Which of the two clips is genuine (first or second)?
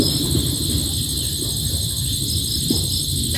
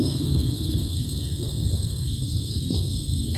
first